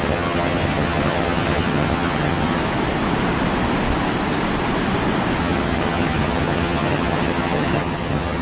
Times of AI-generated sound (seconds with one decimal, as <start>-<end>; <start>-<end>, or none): 0.0-2.6; 5.4-8.4